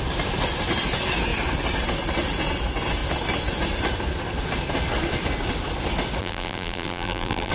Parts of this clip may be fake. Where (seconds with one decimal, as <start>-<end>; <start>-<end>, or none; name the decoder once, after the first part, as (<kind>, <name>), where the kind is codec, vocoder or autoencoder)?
6.2-7.5 (vocoder, BigVGAN v2)